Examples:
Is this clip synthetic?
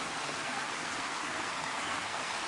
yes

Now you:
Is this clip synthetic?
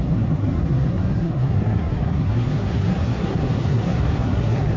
yes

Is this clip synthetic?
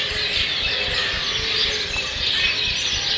no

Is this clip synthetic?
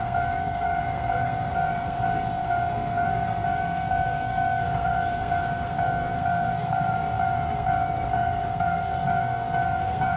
yes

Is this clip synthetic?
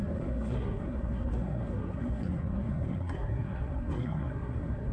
yes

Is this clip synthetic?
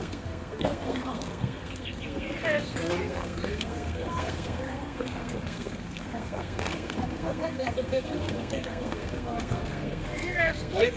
yes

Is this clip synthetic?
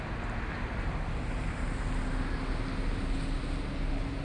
no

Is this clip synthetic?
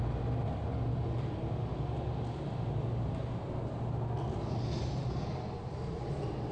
no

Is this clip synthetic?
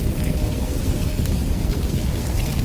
yes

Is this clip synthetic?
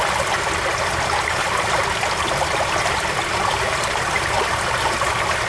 no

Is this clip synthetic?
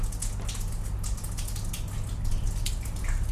no